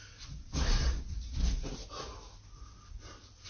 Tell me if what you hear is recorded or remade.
recorded